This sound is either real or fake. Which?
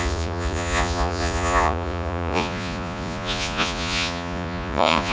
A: fake